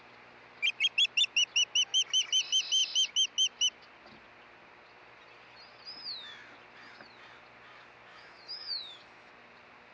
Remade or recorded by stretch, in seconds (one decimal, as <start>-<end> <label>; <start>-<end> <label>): 0.0-8.1 recorded; 8.1-9.3 remade; 9.3-9.9 recorded